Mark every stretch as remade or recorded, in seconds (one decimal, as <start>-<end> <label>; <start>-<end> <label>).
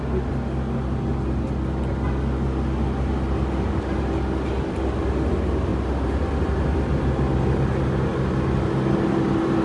0.0-9.6 recorded